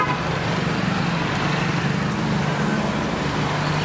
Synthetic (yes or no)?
no